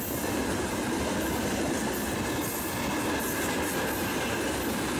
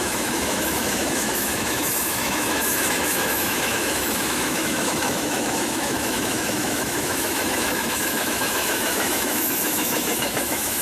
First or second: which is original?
first